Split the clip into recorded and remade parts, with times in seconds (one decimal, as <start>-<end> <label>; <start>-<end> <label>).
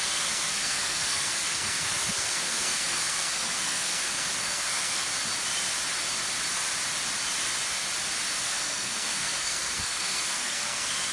0.0-5.1 remade; 5.1-8.4 recorded; 8.4-11.1 remade